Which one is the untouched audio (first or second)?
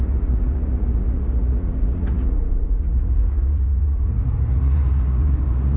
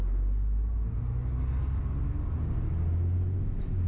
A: second